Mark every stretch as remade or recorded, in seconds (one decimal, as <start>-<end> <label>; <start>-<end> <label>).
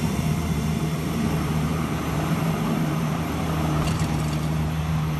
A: 0.0-5.2 remade